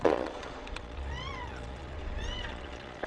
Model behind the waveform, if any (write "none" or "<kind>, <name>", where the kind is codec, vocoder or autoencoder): vocoder, Vocos